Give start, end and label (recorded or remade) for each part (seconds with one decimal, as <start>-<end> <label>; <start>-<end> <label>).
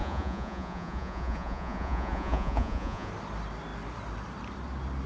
0.0-3.1 remade; 3.1-5.1 recorded